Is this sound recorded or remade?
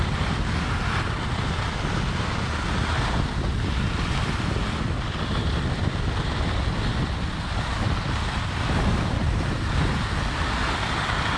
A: recorded